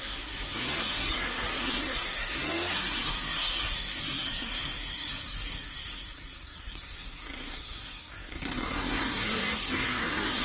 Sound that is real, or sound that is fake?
fake